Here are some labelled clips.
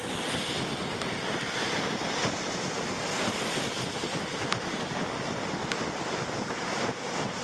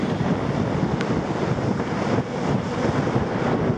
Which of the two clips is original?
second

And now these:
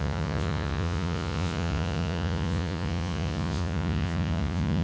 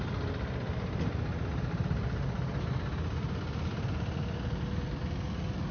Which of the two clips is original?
second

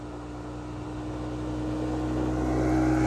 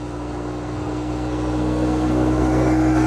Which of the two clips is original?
first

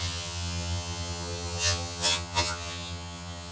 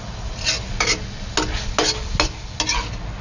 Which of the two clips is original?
second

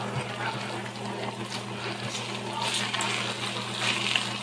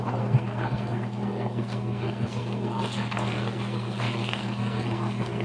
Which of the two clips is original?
first